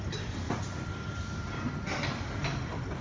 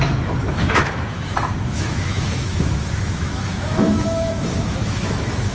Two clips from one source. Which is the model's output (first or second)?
second